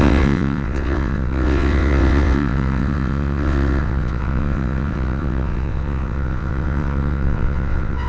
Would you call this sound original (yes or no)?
no